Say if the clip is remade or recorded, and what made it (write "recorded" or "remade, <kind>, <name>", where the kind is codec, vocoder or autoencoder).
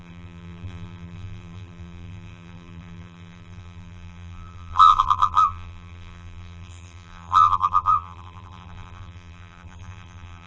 remade, vocoder, BigVGAN v2